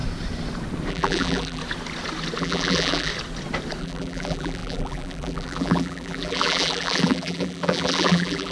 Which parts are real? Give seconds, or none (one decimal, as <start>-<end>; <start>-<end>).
0.0-0.9; 1.6-2.4; 3.1-3.8